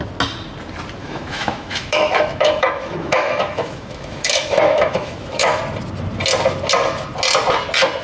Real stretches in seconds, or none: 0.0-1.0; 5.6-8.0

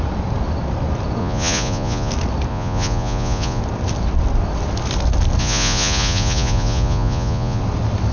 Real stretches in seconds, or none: 0.0-1.2; 2.1-2.5; 3.6-5.4; 7.6-8.1

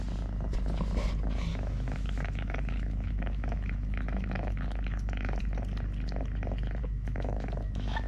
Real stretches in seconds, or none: 0.0-1.5; 5.4-6.8